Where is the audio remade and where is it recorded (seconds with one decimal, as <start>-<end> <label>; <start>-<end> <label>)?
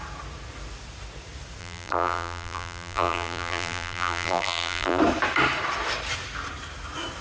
0.0-1.6 recorded; 1.6-5.0 remade; 5.0-7.2 recorded